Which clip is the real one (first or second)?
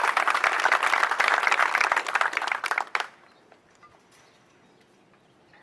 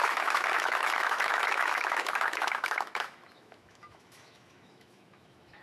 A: first